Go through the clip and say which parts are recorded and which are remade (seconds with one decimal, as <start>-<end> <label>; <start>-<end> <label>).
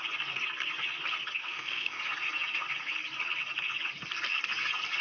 0.0-1.4 recorded; 1.4-2.0 remade; 2.0-5.0 recorded